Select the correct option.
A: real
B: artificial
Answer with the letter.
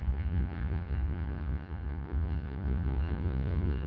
B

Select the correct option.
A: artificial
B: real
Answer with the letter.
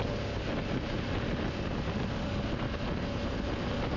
B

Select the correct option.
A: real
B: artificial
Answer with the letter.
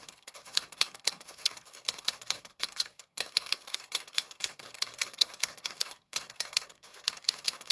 B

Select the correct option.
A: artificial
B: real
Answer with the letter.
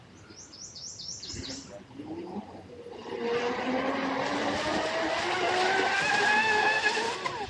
B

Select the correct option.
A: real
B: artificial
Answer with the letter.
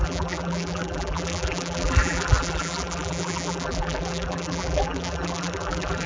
B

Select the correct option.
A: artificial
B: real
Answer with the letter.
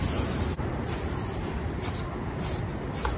B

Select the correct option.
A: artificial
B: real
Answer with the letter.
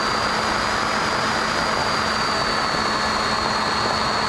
B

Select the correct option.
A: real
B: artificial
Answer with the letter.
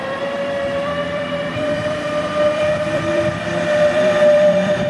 B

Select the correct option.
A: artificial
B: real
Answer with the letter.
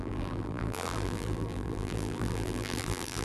A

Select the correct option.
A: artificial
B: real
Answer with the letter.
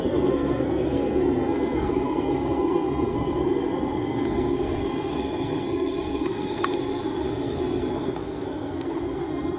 A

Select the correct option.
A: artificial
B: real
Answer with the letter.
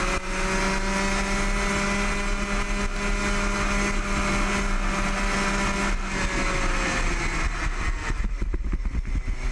B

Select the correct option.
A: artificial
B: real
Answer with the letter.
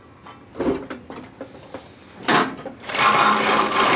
B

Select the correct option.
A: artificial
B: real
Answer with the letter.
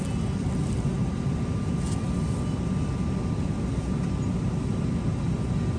B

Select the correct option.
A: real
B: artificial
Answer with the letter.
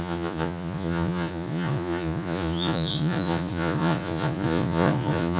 B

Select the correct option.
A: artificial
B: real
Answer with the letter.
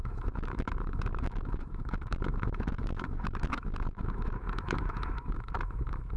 A